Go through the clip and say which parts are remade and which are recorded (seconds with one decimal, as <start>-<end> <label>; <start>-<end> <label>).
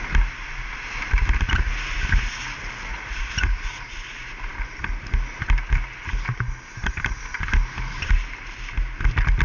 0.0-2.9 recorded; 2.9-3.8 remade; 3.8-9.4 recorded